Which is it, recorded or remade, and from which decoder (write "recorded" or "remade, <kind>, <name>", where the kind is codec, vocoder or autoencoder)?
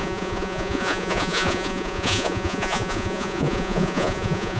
remade, vocoder, Vocos